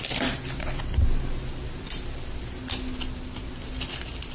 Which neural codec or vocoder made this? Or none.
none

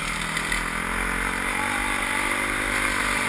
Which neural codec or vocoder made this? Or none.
none